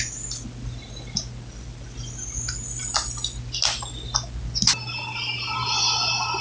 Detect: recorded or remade recorded